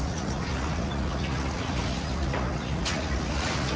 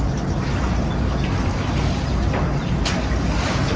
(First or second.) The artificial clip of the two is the first